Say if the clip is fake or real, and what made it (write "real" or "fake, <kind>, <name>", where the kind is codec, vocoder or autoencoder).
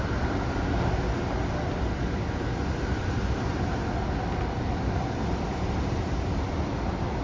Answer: real